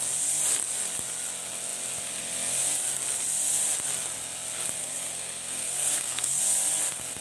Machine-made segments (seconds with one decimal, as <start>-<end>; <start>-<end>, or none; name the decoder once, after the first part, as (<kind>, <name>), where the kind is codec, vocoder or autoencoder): 4.8-6.4 (codec, SNAC)